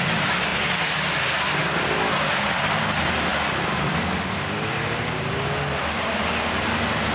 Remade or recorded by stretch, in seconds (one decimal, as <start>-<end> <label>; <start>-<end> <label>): 0.0-1.6 recorded; 1.6-2.8 remade; 2.8-3.3 recorded; 3.3-5.1 remade; 5.1-7.1 recorded

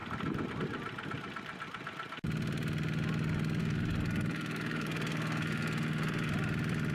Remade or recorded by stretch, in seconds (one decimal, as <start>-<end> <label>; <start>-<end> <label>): 0.0-3.6 recorded; 3.6-6.3 remade; 6.3-6.9 recorded

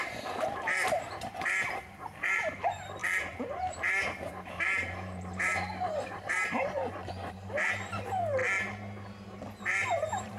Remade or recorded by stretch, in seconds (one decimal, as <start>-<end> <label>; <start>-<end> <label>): 0.0-8.4 remade; 8.4-9.6 recorded; 9.6-10.4 remade

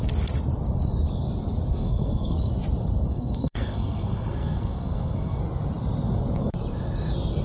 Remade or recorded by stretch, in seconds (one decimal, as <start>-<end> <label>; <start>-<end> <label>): 0.0-1.7 recorded; 1.7-2.5 remade; 2.5-3.1 recorded; 3.1-5.4 remade; 5.4-7.4 recorded